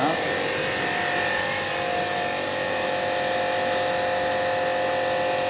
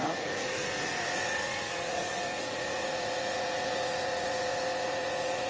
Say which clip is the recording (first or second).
first